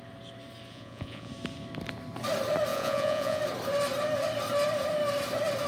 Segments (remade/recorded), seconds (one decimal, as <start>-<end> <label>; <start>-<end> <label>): 0.0-0.7 recorded; 0.7-1.3 remade; 1.3-2.7 recorded; 2.7-3.4 remade; 3.4-5.7 recorded